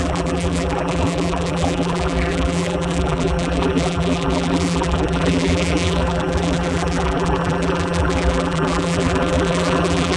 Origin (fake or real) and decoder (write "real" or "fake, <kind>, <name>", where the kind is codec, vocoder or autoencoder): fake, vocoder, BigVGAN v2